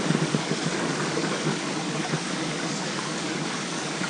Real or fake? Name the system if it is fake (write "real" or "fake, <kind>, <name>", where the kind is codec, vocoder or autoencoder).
fake, codec, DAC